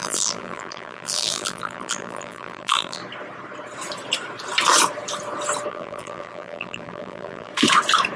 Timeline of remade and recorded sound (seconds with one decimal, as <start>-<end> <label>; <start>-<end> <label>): 0.0-3.0 remade; 3.0-5.7 recorded; 5.7-7.5 remade; 7.5-8.2 recorded